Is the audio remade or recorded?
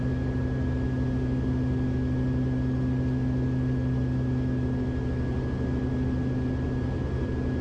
recorded